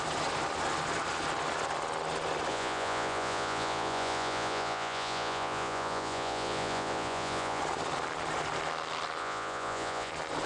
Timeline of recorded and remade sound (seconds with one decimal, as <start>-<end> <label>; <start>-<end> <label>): 0.0-2.5 recorded; 2.5-7.6 remade; 7.6-9.2 recorded; 9.2-10.1 remade; 10.1-10.5 recorded